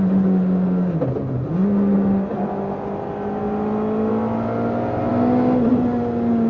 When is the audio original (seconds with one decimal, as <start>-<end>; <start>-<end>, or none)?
0.0-6.5